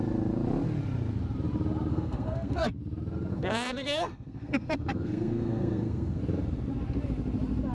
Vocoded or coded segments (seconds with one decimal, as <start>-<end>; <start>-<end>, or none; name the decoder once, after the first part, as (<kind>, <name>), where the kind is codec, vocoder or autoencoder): 1.9-2.7 (codec, SNAC); 3.3-6.2